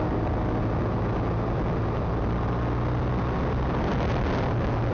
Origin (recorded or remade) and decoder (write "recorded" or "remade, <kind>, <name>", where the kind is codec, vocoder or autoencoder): recorded